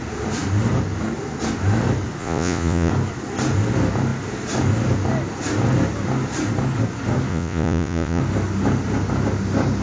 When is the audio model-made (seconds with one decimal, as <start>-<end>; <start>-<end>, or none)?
2.2-2.9; 7.3-8.2

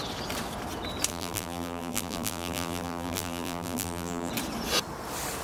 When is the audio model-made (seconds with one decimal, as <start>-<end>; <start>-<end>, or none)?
1.1-4.3

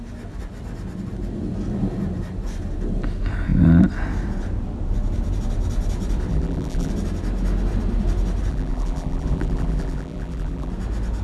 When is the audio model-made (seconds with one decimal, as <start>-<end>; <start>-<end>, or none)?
6.3-6.9; 8.5-10.7